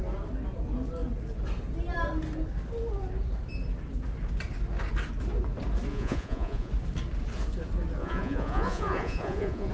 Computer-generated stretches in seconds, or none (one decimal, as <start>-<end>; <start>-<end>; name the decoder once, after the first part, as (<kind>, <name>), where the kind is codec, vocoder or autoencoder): 5.9-6.7 (vocoder, Vocos); 8.0-9.7